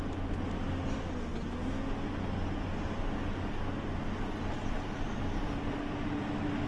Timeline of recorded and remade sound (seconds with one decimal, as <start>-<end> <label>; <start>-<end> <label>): 0.0-6.7 recorded